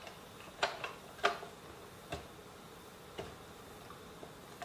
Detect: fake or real real